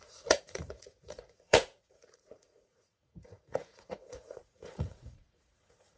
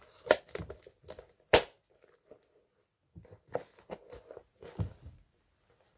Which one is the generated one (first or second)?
first